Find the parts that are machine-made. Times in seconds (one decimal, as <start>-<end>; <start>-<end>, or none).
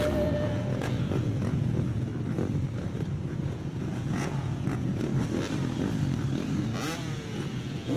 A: 0.0-2.1; 3.3-5.1; 7.0-8.0